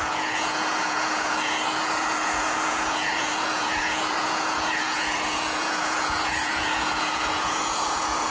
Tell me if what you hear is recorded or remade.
remade